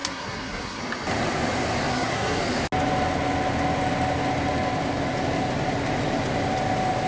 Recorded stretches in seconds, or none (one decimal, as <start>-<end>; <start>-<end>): 0.8-1.9; 2.4-7.1